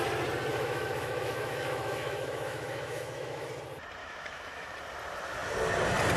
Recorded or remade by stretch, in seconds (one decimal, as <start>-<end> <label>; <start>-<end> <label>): 0.0-0.5 recorded; 0.5-3.5 remade; 3.5-4.0 recorded; 4.0-4.8 remade; 4.8-6.2 recorded